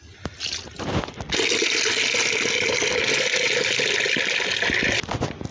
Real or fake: real